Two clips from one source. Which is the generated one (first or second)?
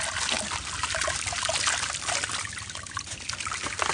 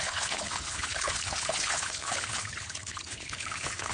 second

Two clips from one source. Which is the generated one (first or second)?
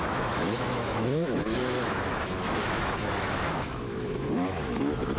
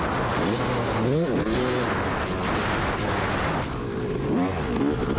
first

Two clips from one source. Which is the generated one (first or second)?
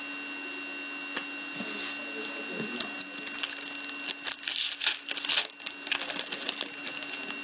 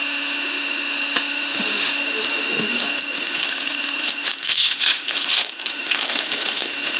second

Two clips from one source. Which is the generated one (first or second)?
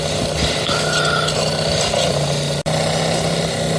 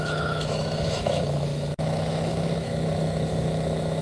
second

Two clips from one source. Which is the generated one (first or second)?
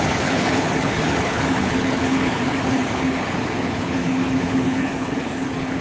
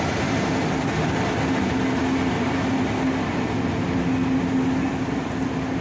first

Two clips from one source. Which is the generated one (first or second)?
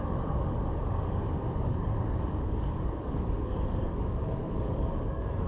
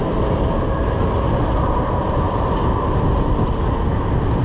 first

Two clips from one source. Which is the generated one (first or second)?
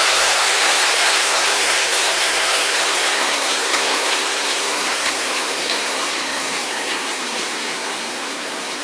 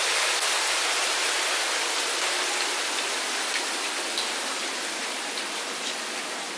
first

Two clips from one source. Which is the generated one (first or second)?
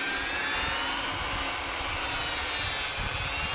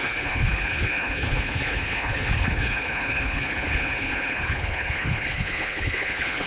second